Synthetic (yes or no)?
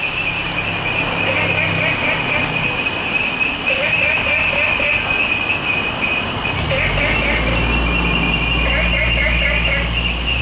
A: no